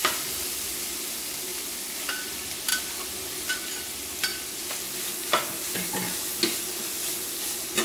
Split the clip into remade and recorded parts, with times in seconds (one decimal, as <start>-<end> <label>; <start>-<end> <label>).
0.0-0.9 remade; 0.9-1.5 recorded; 1.5-2.1 remade; 2.1-7.8 recorded